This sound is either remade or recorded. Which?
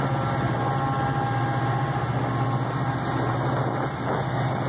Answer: recorded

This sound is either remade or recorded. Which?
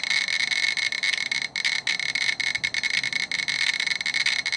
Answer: recorded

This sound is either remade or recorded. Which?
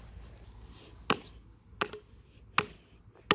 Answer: recorded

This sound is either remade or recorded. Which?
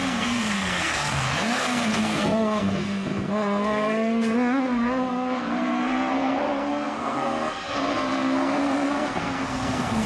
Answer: remade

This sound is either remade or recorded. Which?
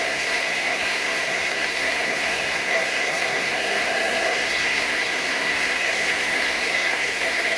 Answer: remade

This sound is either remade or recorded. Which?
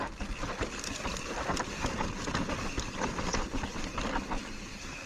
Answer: remade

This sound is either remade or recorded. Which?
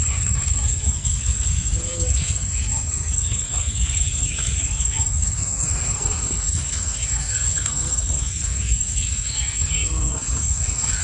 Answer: remade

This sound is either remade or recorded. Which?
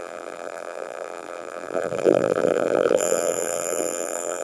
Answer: remade